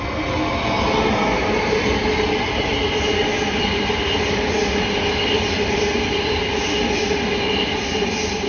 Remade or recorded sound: recorded